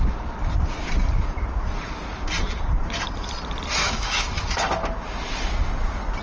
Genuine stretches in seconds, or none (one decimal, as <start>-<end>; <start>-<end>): 0.0-3.8; 4.4-6.2